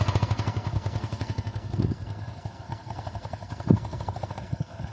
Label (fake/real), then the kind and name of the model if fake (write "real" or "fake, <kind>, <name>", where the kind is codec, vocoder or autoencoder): fake, codec, SNAC